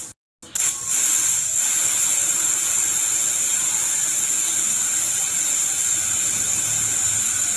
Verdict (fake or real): real